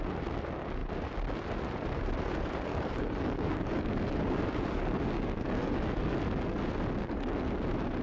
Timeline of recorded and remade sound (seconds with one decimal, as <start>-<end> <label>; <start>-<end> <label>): 0.0-2.7 recorded; 2.7-6.2 remade; 6.2-7.0 recorded; 7.0-7.5 remade; 7.5-8.0 recorded